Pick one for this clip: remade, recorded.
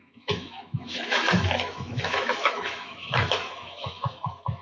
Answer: remade